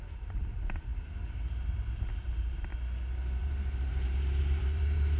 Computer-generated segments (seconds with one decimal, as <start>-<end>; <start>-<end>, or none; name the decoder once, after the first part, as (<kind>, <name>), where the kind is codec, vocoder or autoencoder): 0.0-0.9 (vocoder, BigVGAN v2); 2.1-2.7; 3.4-5.2